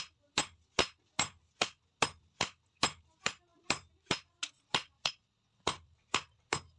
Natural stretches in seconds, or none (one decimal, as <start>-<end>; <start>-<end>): 0.0-6.8